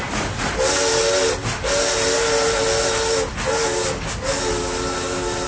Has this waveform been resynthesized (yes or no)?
no